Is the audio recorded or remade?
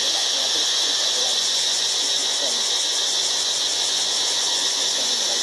remade